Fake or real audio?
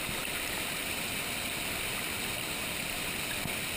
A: real